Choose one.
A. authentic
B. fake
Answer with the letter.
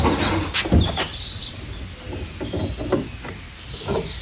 A